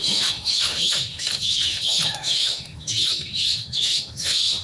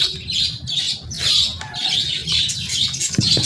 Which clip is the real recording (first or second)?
second